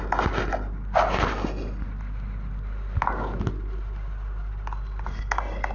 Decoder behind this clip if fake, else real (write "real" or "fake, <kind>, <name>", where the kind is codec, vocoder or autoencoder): real